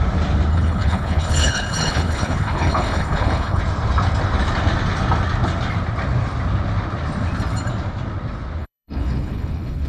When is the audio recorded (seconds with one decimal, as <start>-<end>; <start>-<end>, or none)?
0.0-0.5; 3.6-8.6